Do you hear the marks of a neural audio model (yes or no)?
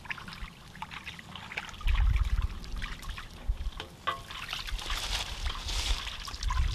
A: no